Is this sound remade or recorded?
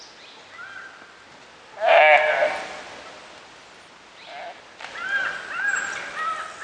recorded